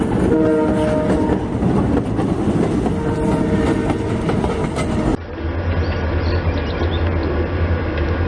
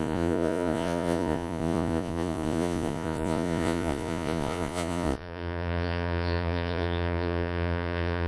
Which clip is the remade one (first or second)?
second